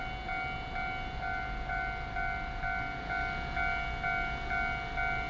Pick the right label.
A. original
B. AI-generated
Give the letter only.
A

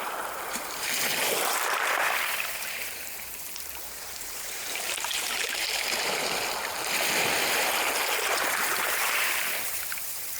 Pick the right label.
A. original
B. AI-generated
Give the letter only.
B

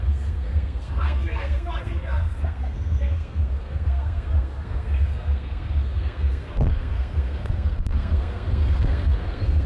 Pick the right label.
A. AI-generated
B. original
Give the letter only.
A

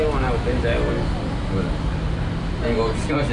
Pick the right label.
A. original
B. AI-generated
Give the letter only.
A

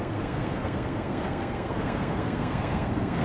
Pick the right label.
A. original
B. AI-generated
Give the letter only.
B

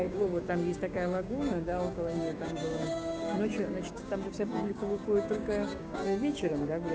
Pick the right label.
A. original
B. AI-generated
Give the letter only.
B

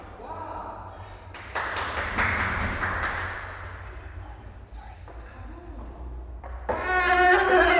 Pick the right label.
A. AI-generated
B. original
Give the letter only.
B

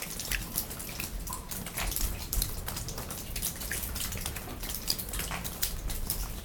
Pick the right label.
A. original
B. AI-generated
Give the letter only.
A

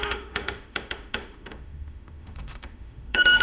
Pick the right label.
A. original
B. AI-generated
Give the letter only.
B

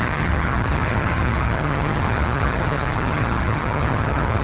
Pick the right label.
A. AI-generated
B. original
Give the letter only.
A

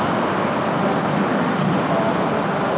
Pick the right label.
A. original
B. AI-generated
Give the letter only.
A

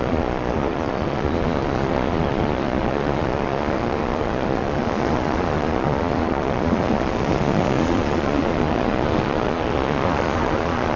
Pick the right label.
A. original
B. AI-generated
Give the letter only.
B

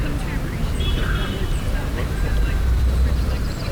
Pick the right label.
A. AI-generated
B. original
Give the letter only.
A